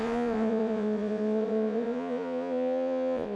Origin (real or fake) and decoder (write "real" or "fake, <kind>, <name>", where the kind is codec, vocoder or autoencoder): fake, vocoder, Vocos